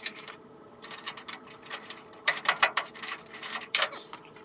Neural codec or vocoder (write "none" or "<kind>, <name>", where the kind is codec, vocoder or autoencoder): vocoder, BigVGAN v2